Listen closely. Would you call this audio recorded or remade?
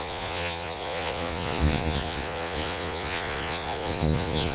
remade